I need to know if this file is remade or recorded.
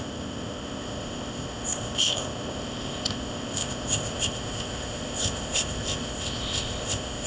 remade